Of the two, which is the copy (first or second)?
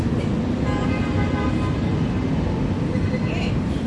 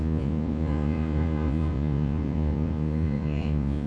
second